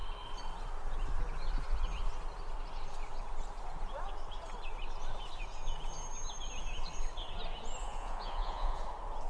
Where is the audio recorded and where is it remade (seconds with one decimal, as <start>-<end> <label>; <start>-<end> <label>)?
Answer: 0.0-7.8 recorded; 7.8-8.8 remade; 8.8-9.3 recorded